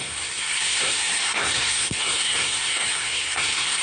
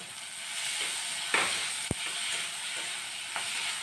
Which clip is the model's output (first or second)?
first